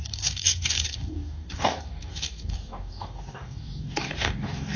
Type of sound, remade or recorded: remade